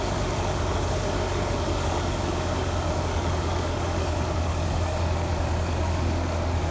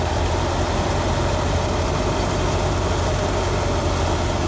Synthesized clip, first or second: first